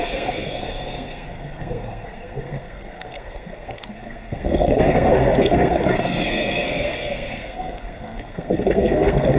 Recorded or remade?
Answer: remade